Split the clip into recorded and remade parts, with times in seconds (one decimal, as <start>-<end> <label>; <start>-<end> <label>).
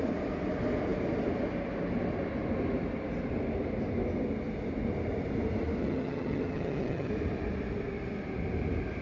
0.0-5.8 recorded; 5.8-7.1 remade; 7.1-9.0 recorded